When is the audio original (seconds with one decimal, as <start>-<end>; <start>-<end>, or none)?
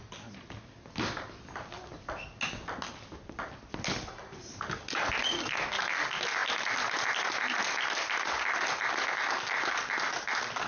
0.0-10.7